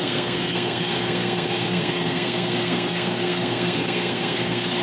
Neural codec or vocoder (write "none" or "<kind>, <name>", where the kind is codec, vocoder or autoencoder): codec, SNAC